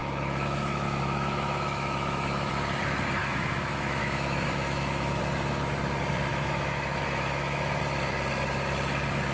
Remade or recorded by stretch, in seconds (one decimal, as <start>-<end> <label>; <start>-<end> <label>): 0.0-2.5 remade; 2.5-3.2 recorded; 3.2-5.2 remade; 5.2-6.3 recorded; 6.3-7.8 remade; 7.8-9.3 recorded